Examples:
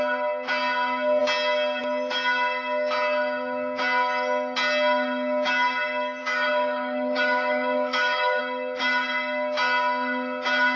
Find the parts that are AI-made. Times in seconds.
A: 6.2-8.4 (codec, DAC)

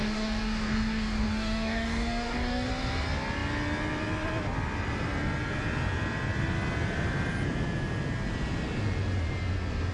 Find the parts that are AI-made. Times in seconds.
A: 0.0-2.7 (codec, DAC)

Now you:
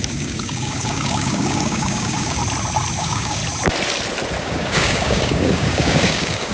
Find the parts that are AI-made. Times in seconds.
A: 0.0-2.4 (codec, DAC); 3.0-3.4; 4.4-6.5

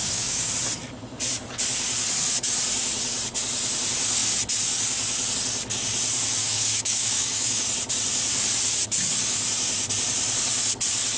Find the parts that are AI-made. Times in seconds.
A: 0.0-0.5 (codec, DAC); 6.4-7.7

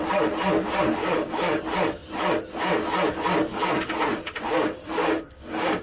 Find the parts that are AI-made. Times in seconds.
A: 1.0-1.6 (codec, DAC); 5.0-5.8

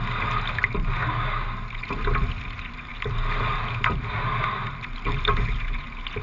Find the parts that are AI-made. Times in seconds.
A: none